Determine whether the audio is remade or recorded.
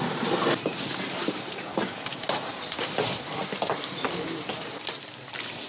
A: recorded